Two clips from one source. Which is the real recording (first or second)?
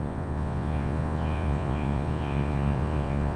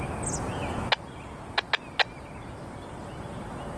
second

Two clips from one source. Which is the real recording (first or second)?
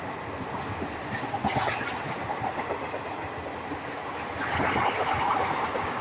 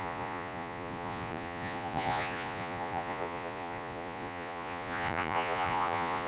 first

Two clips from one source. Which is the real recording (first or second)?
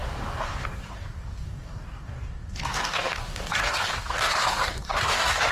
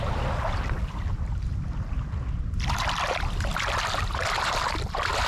second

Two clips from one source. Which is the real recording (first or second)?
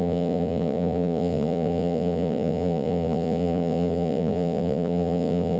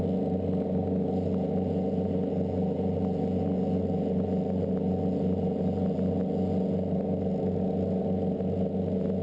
second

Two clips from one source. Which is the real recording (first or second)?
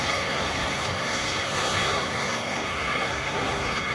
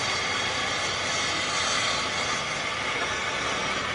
second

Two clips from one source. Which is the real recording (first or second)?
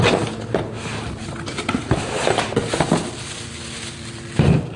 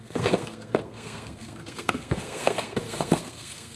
first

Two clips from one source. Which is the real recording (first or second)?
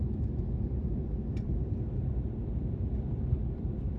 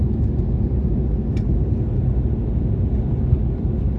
second